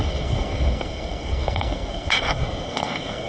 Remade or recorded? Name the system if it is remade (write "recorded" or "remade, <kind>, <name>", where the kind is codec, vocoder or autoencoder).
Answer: remade, codec, SNAC